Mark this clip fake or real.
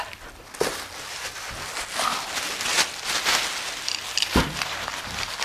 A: real